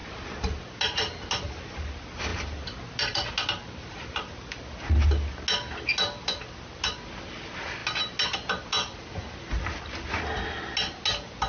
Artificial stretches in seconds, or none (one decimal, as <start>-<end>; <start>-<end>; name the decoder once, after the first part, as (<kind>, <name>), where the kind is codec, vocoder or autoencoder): none